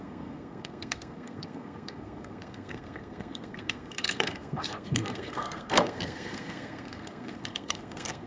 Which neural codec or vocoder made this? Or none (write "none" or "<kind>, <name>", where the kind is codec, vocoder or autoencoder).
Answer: codec, SNAC